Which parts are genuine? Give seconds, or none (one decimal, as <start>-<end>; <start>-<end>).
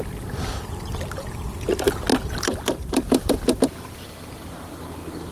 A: 0.7-2.1; 3.6-5.3